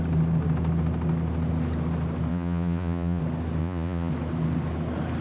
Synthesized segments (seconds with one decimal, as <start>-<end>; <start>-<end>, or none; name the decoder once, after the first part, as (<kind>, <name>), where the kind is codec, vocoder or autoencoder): 2.3-3.2 (vocoder, Vocos); 3.6-4.1